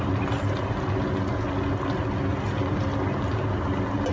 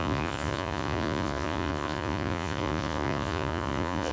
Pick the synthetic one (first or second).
second